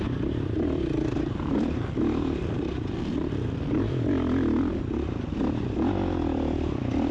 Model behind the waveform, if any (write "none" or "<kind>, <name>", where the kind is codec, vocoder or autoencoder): vocoder, BigVGAN v2